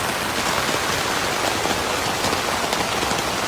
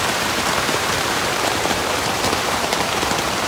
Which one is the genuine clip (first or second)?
first